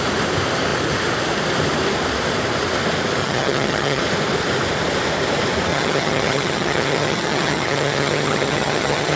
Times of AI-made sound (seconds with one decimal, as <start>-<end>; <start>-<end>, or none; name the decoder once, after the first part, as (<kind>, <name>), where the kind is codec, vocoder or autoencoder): 3.2-4.0 (vocoder, HiFi-GAN); 5.7-9.2